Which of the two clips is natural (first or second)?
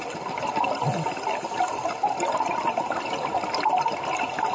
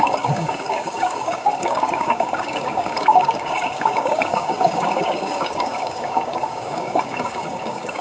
first